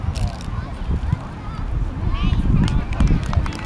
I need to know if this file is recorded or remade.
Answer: recorded